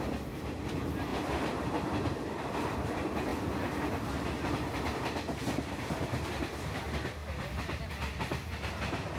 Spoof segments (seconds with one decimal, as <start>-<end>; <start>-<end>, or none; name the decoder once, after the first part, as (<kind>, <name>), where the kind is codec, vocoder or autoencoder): 0.0-3.3 (vocoder, BigVGAN v2); 4.5-9.2

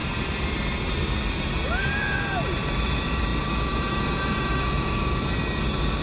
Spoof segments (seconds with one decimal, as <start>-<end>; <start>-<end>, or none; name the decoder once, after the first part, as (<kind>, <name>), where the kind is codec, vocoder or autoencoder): none